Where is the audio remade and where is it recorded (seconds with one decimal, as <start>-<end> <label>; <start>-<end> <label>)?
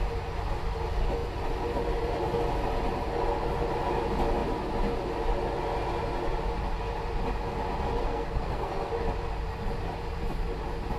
0.0-8.0 recorded; 8.0-8.9 remade; 8.9-11.0 recorded